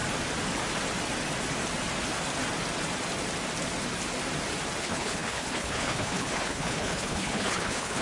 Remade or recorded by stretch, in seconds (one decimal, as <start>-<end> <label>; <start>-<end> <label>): 0.0-4.8 recorded; 4.8-8.0 remade